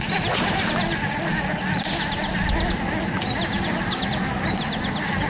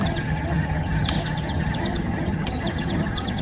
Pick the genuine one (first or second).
first